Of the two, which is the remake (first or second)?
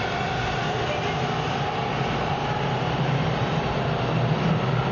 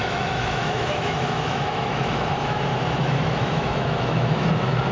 second